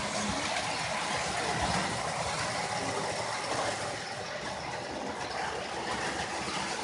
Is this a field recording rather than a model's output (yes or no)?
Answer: yes